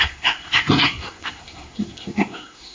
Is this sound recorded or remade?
remade